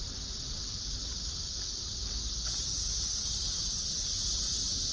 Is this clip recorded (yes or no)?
yes